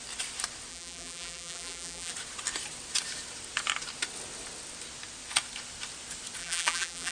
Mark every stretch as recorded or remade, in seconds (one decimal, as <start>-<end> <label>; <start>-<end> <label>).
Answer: 0.0-0.7 recorded; 0.7-2.1 remade; 2.1-6.4 recorded; 6.4-7.1 remade